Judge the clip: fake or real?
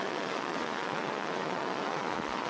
fake